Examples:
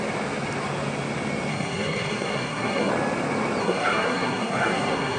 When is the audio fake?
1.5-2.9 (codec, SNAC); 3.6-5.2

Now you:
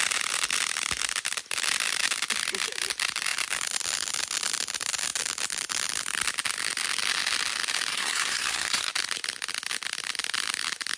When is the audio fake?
7.9-8.9 (codec, SNAC)

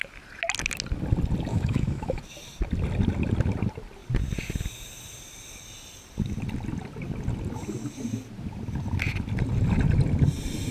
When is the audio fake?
1.5-2.2 (autoencoder, DAC-VAE)

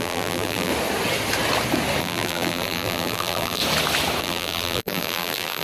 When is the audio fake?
0.0-0.7 (vocoder, BigVGAN v2); 2.0-3.6; 4.2-5.6

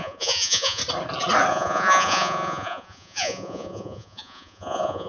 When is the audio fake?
0.0-0.8 (vocoder, Vocos); 1.5-5.1

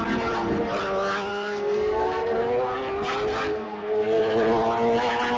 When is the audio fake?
1.3-2.4 (codec, SNAC); 3.5-4.2